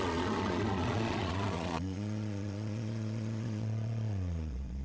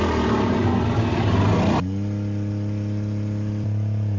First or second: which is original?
second